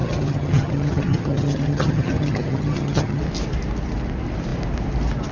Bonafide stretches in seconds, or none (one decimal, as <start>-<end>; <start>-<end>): 3.2-5.3

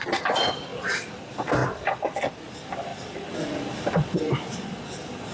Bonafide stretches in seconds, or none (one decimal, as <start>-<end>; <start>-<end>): 0.0-5.3

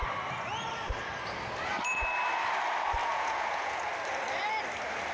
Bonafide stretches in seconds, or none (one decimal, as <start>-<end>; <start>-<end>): 0.0-3.0; 3.8-5.1